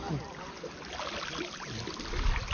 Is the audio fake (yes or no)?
no